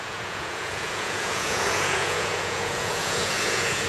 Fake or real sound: fake